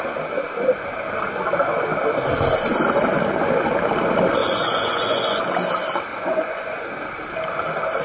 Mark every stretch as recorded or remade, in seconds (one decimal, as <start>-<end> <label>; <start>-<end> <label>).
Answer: 0.0-4.4 recorded; 4.4-5.4 remade; 5.4-6.1 recorded; 6.1-6.9 remade; 6.9-8.0 recorded

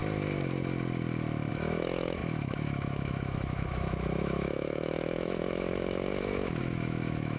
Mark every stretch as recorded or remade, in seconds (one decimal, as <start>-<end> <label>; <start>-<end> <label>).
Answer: 0.0-1.5 recorded; 1.5-7.4 remade

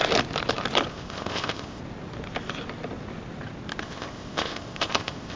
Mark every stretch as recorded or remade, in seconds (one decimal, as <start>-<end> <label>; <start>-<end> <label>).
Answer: 0.0-0.9 recorded; 0.9-1.8 remade; 1.8-3.8 recorded; 3.8-5.4 remade

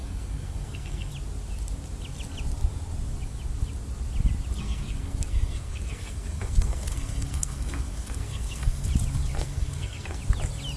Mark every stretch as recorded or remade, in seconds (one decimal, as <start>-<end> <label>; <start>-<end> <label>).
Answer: 0.0-1.1 remade; 1.1-4.6 recorded; 4.6-8.9 remade; 8.9-9.3 recorded; 9.3-10.2 remade; 10.2-10.8 recorded

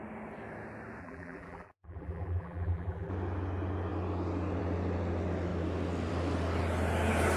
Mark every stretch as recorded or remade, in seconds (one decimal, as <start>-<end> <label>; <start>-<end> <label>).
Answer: 0.0-1.0 recorded; 1.0-3.1 remade; 3.1-7.4 recorded

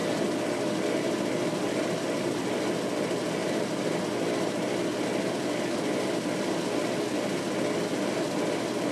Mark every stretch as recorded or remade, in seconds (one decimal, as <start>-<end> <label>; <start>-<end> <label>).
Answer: 0.0-3.4 recorded; 3.4-4.0 remade; 4.0-8.9 recorded

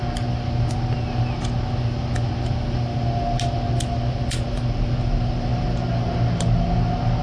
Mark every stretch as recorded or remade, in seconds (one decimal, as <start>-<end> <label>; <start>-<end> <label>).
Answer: 0.0-7.2 recorded

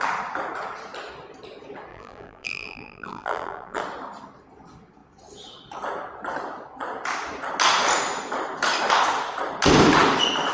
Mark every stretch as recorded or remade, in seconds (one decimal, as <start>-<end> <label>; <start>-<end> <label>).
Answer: 0.0-1.9 recorded; 1.9-3.8 remade; 3.8-10.5 recorded